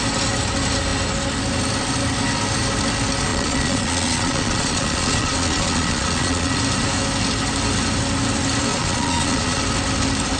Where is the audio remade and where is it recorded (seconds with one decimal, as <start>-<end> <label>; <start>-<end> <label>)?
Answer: 0.0-3.3 recorded; 3.3-6.6 remade; 6.6-8.7 recorded; 8.7-9.6 remade; 9.6-10.4 recorded